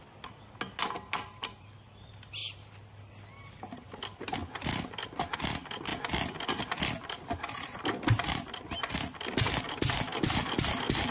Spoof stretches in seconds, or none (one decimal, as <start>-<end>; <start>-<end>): none